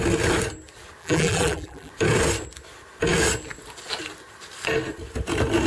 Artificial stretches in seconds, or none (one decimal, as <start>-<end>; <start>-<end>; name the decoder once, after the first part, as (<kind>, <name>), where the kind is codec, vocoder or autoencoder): 1.0-1.9 (vocoder, BigVGAN v2)